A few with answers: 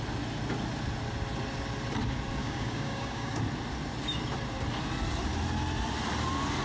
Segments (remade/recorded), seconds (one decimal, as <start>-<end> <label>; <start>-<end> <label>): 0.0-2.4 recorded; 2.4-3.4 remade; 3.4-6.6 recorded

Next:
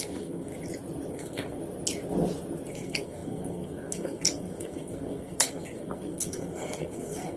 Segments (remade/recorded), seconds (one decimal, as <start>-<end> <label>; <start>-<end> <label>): 0.0-0.5 remade; 0.5-1.1 recorded; 1.1-1.6 remade; 1.6-2.7 recorded; 2.7-7.4 remade

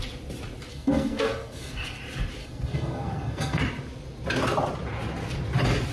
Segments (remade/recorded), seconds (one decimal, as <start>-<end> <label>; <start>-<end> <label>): 0.0-0.7 recorded; 0.7-2.0 remade; 2.0-2.4 recorded; 2.4-3.6 remade; 3.6-5.9 recorded

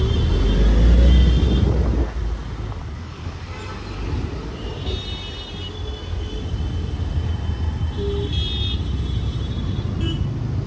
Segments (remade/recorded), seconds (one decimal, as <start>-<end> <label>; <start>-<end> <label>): 0.0-2.8 recorded; 2.8-3.4 remade; 3.4-10.7 recorded

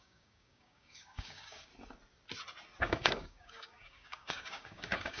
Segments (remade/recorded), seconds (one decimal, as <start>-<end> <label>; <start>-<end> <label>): 0.0-1.7 remade; 1.7-2.8 recorded; 2.8-5.2 remade